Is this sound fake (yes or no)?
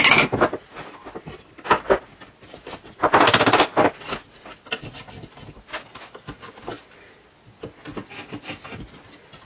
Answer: no